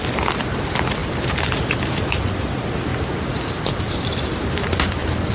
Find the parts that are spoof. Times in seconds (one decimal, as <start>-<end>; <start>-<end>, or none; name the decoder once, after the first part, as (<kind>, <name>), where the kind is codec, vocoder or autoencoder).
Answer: 1.0-2.3 (vocoder, BigVGAN v2); 2.9-5.3